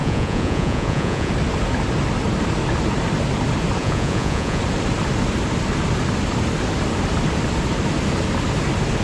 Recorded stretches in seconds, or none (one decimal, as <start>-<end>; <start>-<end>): 1.3-3.8; 4.6-9.0